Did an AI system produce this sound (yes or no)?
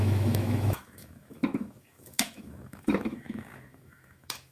yes